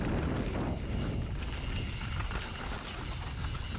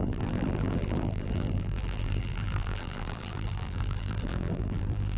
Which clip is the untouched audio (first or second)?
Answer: first